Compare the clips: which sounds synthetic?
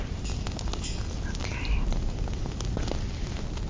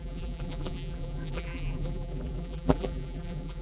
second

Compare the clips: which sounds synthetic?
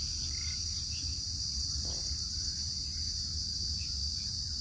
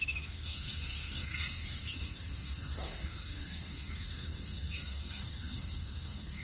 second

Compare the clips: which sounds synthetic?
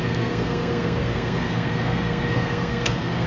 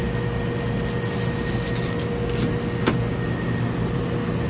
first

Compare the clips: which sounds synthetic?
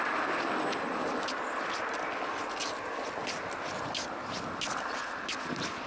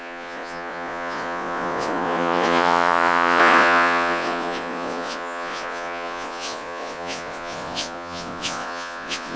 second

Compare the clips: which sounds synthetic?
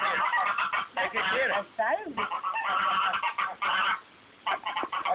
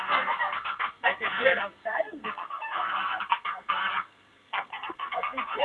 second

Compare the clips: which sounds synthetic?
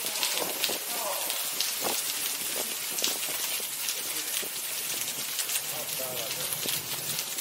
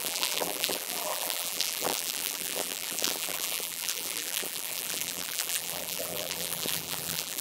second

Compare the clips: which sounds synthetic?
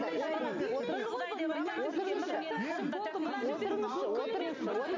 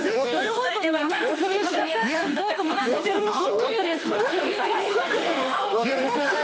second